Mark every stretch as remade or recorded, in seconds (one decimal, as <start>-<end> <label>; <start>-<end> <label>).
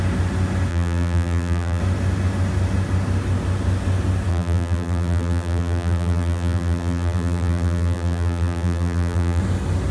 0.0-0.7 recorded; 0.7-1.8 remade; 1.8-4.3 recorded; 4.3-9.4 remade; 9.4-9.9 recorded